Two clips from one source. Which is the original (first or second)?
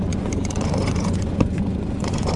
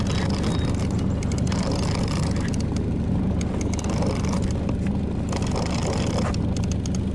second